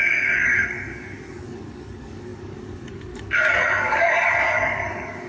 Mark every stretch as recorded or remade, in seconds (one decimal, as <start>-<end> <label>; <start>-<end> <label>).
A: 0.0-5.3 remade